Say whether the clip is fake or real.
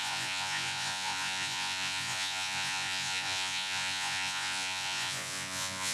fake